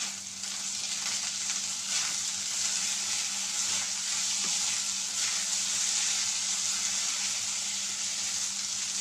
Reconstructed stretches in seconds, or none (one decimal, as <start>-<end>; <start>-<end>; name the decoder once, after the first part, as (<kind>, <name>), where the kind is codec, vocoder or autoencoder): none